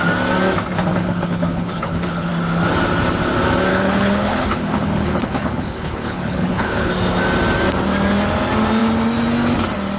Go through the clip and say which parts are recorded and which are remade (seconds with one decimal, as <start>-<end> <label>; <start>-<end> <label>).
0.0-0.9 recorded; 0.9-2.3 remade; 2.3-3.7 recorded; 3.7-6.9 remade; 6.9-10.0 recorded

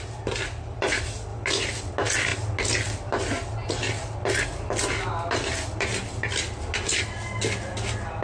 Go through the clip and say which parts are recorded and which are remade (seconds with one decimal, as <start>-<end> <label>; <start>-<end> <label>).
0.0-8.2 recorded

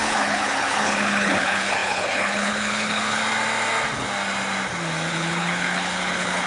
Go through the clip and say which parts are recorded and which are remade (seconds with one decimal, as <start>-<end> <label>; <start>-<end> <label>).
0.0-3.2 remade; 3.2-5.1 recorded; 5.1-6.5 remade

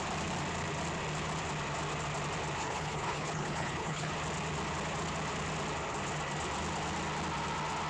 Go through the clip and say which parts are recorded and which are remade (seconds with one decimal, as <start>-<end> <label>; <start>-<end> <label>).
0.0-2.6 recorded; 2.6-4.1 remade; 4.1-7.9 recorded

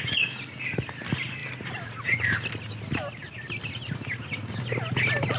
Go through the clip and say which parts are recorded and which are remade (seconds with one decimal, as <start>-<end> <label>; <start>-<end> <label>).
0.0-5.4 recorded

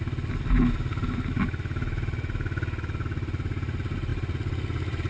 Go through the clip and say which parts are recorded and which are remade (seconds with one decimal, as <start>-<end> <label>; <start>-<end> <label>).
0.0-5.1 recorded

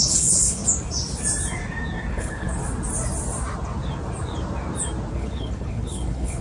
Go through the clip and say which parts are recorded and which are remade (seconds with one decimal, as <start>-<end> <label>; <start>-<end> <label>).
0.0-0.6 remade; 0.6-2.1 recorded; 2.1-2.6 remade; 2.6-5.1 recorded; 5.1-6.4 remade